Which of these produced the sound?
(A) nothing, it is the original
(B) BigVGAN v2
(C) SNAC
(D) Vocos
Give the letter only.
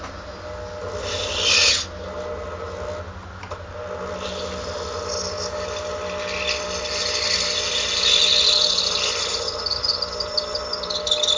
A